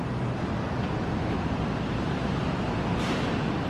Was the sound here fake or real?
real